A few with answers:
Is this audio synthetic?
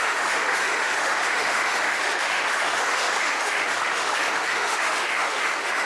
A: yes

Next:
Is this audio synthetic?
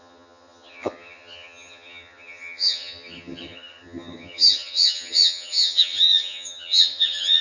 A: yes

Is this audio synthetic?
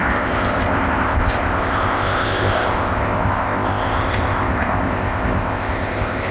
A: yes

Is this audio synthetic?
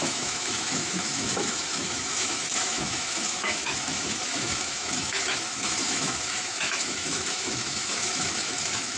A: yes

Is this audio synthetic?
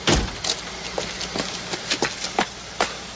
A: no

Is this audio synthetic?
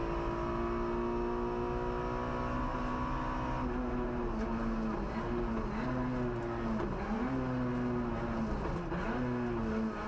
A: no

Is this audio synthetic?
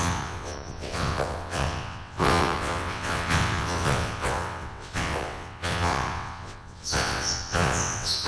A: yes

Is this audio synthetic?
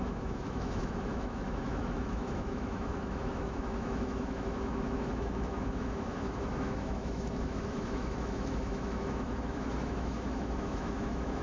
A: yes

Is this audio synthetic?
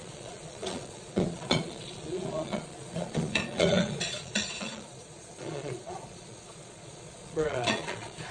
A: yes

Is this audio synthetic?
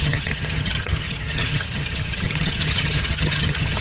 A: yes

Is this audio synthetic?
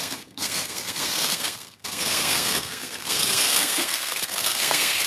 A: yes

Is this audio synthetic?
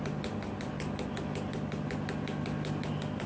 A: no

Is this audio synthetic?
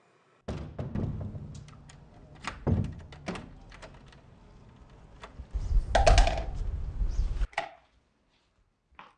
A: no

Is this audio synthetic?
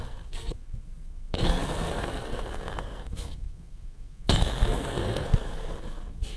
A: yes